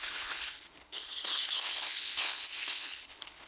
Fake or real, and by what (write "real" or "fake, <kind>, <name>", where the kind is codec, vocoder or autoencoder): fake, codec, HILCodec